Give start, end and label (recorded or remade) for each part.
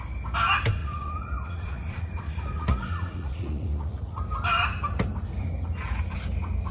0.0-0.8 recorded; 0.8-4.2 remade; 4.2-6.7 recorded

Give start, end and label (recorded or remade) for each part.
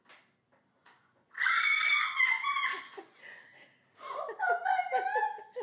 0.0-0.8 recorded; 0.8-3.4 remade; 3.4-5.6 recorded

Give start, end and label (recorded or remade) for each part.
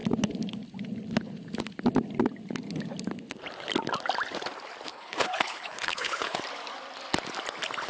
0.0-4.9 recorded; 4.9-6.4 remade; 6.4-7.9 recorded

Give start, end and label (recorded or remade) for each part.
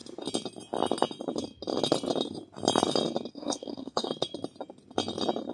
0.0-3.3 recorded; 3.3-4.1 remade; 4.1-5.5 recorded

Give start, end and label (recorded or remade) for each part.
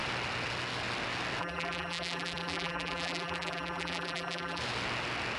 0.0-1.4 recorded; 1.4-4.6 remade; 4.6-5.4 recorded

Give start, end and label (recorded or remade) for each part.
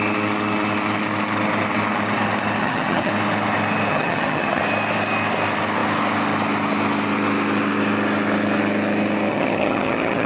0.0-2.6 recorded; 2.6-3.1 remade; 3.1-3.9 recorded; 3.9-4.6 remade; 4.6-9.3 recorded; 9.3-10.3 remade